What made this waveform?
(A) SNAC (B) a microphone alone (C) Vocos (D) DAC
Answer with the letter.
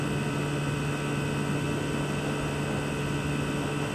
B